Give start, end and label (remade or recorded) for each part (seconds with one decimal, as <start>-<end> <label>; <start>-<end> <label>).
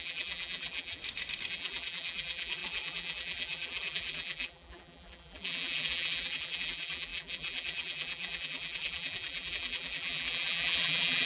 0.0-1.0 remade; 1.0-1.5 recorded; 1.5-11.3 remade